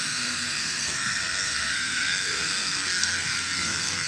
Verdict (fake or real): fake